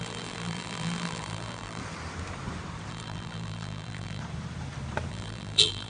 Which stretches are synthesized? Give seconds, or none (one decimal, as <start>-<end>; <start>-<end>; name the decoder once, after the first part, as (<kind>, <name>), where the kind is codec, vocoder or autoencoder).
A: 0.0-1.8 (vocoder, BigVGAN v2); 2.9-4.2; 5.1-5.9